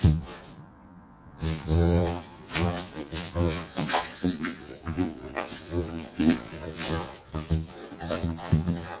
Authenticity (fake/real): fake